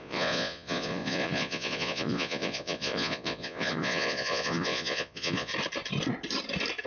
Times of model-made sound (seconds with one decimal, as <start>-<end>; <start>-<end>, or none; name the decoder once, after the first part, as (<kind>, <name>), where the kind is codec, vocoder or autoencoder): 0.0-5.5 (vocoder, Vocos)